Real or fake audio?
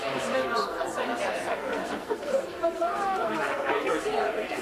fake